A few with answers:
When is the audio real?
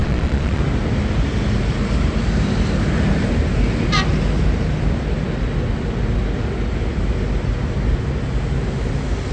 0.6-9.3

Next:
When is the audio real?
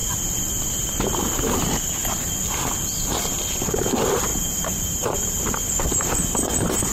0.0-4.3; 5.4-6.9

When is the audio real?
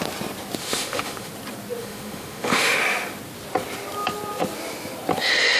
0.0-0.6; 1.3-1.8; 2.8-5.6